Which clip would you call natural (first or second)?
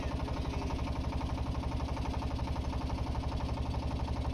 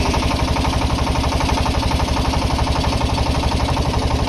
first